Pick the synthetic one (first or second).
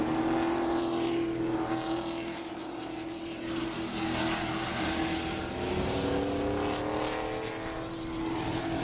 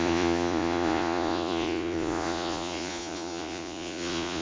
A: second